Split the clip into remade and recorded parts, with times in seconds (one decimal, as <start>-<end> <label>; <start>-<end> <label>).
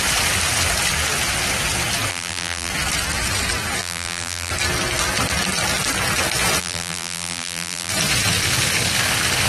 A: 0.0-2.1 recorded; 2.1-2.7 remade; 2.7-3.8 recorded; 3.8-4.5 remade; 4.5-6.6 recorded; 6.6-7.9 remade; 7.9-9.5 recorded